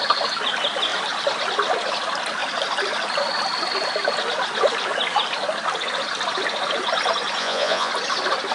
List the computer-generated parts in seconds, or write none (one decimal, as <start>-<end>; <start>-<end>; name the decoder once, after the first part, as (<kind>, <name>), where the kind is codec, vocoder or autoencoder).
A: 7.4-7.9 (vocoder, Vocos)